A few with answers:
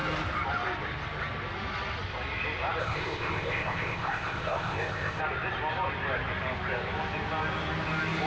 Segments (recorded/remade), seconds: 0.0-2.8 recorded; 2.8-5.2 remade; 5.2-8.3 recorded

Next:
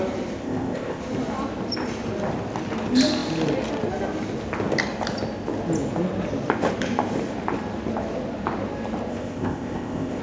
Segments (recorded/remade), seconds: 0.0-0.4 recorded; 0.4-1.0 remade; 1.0-9.1 recorded; 9.1-10.2 remade

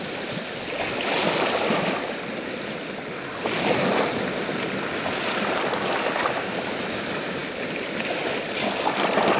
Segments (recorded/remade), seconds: 0.0-9.4 recorded

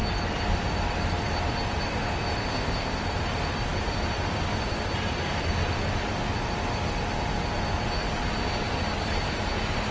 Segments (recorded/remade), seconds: 0.0-2.4 recorded; 2.4-3.0 remade; 3.0-9.9 recorded